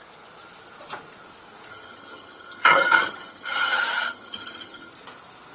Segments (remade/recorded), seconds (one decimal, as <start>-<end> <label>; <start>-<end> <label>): 0.0-1.7 recorded; 1.7-4.9 remade; 4.9-5.5 recorded